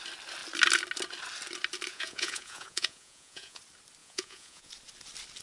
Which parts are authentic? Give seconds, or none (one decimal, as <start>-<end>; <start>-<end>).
0.0-1.9; 3.6-4.0; 4.7-5.4